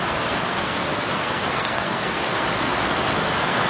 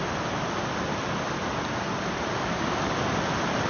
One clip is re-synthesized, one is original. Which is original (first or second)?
second